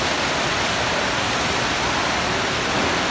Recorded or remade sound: recorded